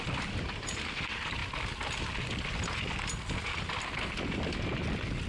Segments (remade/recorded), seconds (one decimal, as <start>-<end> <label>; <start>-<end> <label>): 0.0-5.3 recorded